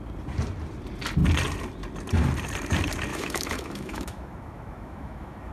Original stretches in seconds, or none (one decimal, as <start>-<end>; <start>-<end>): 0.0-3.1